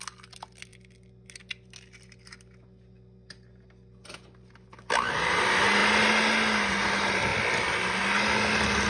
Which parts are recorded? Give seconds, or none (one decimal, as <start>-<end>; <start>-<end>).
0.0-8.9